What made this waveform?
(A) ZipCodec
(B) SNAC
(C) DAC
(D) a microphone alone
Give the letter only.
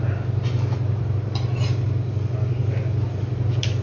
D